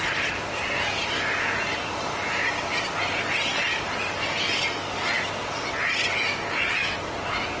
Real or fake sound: real